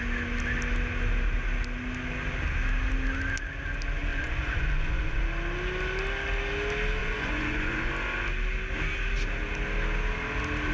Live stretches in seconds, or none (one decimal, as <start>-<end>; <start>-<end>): 0.0-4.1; 5.2-7.0; 7.9-10.7